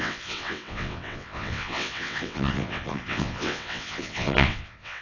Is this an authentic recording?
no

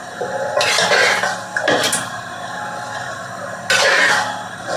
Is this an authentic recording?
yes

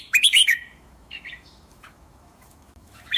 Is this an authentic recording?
no